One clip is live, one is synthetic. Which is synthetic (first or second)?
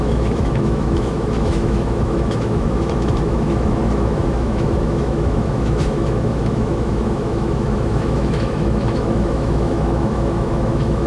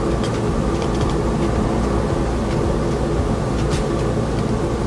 first